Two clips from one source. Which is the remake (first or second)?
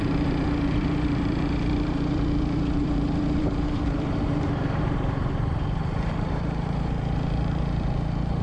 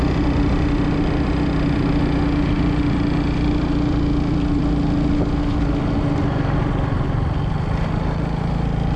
first